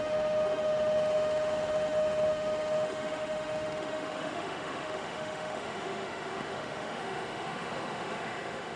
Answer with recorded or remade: remade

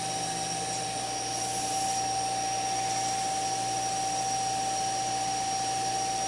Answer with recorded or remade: recorded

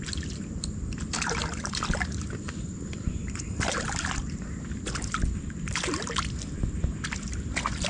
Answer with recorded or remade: recorded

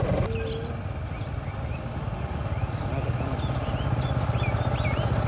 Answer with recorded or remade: recorded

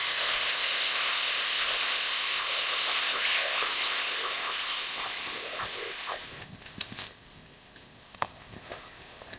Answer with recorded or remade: remade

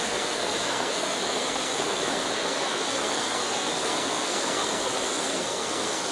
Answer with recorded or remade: remade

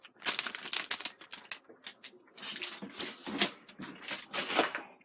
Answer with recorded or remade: recorded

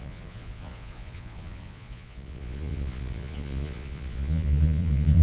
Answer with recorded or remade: remade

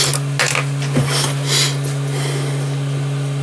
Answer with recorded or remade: recorded